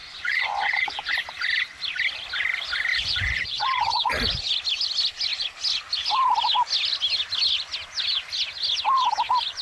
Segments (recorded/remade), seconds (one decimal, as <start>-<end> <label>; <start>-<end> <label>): 0.0-1.1 remade; 1.1-2.9 recorded; 2.9-4.1 remade; 4.1-9.6 recorded